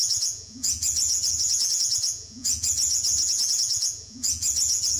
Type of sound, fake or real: fake